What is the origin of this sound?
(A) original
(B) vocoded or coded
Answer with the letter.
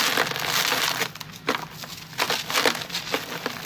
A